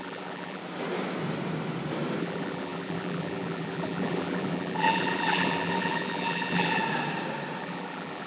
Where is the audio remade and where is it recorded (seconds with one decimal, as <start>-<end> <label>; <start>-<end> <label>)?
0.0-0.6 remade; 0.6-2.2 recorded; 2.2-6.8 remade; 6.8-7.6 recorded; 7.6-8.3 remade